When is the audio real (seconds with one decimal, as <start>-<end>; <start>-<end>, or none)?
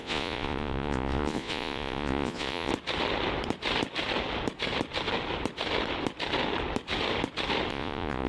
2.7-7.7